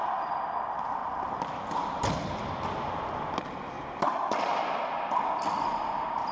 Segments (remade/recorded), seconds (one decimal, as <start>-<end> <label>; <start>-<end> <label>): 0.0-6.3 recorded